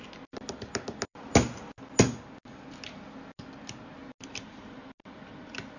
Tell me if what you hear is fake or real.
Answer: real